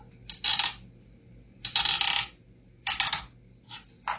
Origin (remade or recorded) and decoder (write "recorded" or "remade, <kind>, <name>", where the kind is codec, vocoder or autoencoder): recorded